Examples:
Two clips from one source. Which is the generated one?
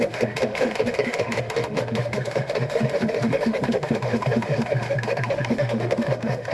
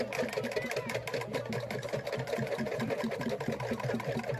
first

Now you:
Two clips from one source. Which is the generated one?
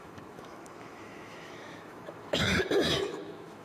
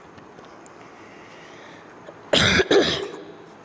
first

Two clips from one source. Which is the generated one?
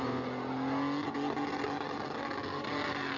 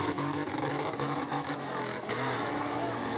second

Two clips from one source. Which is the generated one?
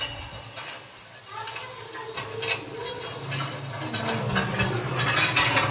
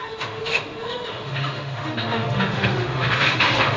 second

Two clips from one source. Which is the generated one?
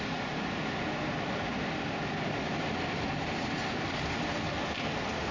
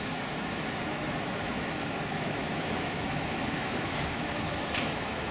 second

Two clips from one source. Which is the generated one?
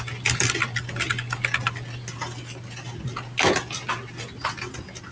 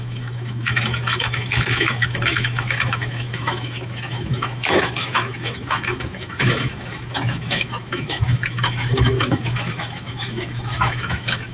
second